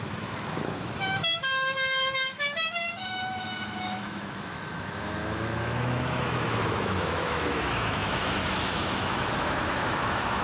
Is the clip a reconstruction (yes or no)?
yes